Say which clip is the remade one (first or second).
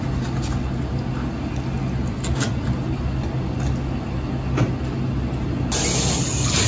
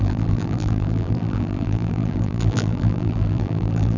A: second